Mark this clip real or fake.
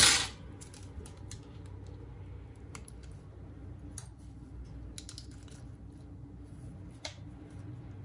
real